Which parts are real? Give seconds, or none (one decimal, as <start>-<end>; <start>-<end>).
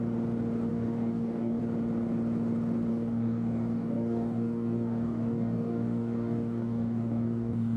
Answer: 0.0-0.7; 1.6-2.9